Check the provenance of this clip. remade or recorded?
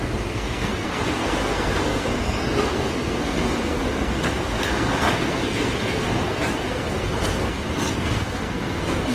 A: remade